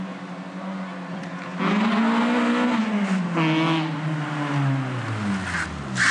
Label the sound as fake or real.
real